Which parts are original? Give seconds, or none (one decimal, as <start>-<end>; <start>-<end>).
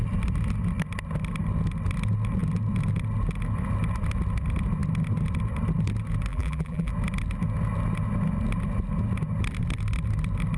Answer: 0.0-6.3; 6.9-10.6